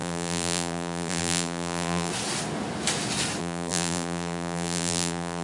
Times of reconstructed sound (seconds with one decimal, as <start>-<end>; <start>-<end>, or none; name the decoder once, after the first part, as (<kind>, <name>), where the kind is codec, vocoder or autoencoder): 0.0-2.1 (vocoder, BigVGAN v2); 3.4-5.4